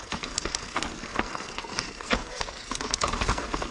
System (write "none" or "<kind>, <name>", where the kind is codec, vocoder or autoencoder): codec, SNAC